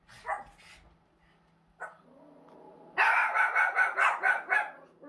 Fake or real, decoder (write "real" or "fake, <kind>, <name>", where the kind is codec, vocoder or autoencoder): real